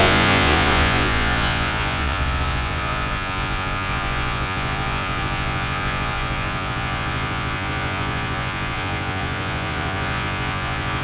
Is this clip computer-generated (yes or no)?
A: yes